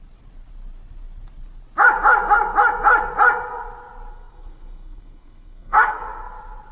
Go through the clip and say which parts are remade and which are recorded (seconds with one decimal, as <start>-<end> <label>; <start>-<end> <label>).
0.0-4.1 recorded; 4.1-6.2 remade; 6.2-6.7 recorded